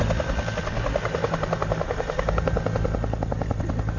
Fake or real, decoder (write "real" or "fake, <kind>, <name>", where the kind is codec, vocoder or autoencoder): real